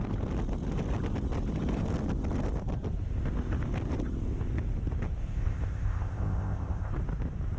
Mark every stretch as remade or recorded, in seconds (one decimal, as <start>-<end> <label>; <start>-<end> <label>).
0.0-5.2 recorded; 5.2-6.9 remade; 6.9-7.6 recorded